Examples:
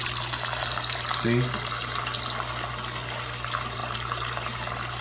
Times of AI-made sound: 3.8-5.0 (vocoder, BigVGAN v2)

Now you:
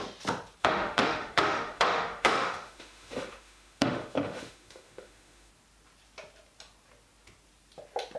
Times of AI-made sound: 0.6-5.5 (autoencoder, DAC-VAE)

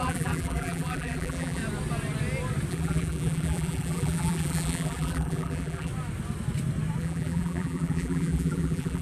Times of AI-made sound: 0.0-1.6 (vocoder, BigVGAN v2); 2.7-5.9; 7.0-9.0

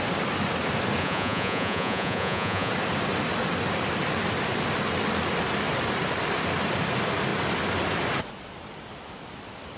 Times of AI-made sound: 1.0-2.7 (vocoder, Vocos)

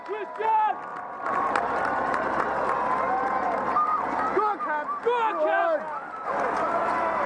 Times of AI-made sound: 0.9-2.4 (vocoder, BigVGAN v2)

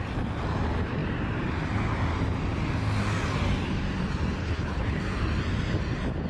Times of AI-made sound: 4.4-5.0 (codec, HILCodec)

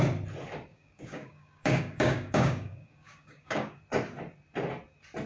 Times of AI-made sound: 0.7-3.8 (codec, DAC)

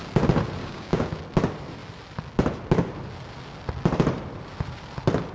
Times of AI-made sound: 0.6-1.1 (codec, DAC)